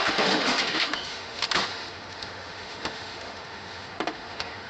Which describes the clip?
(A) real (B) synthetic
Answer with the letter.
B